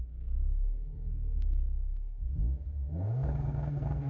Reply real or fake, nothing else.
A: fake